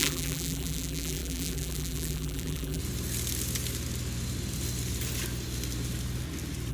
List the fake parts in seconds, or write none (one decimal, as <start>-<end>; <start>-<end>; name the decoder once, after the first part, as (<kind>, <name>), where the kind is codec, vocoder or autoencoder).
0.0-2.8 (vocoder, BigVGAN v2)